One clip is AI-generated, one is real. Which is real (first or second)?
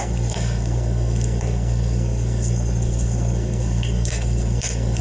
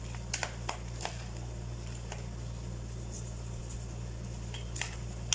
second